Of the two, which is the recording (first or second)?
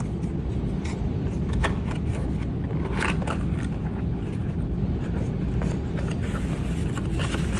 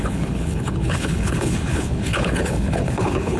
first